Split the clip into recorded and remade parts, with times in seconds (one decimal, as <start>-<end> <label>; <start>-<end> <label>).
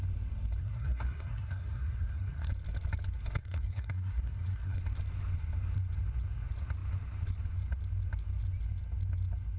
0.0-0.6 recorded; 0.6-2.5 remade; 2.5-3.4 recorded; 3.4-4.8 remade; 4.8-9.6 recorded